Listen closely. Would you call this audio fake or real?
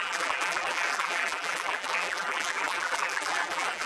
fake